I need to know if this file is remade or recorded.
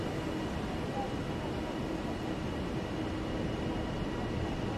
recorded